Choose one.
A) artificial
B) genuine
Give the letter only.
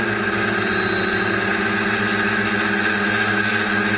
B